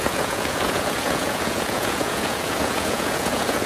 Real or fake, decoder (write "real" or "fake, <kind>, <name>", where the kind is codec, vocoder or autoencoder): fake, vocoder, Vocos